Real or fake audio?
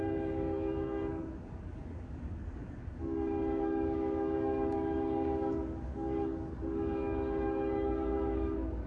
fake